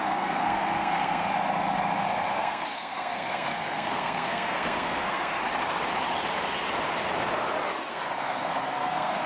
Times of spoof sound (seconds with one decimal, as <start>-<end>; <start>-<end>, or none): 0.0-1.3; 2.3-5.4; 7.9-9.3